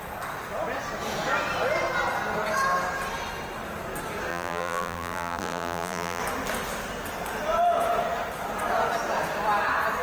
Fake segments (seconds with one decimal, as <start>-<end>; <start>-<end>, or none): 4.3-6.2

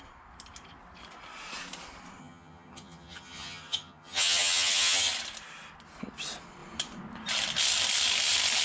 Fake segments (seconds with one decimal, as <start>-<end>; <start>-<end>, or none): 2.2-5.1